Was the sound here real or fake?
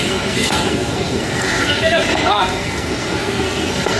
fake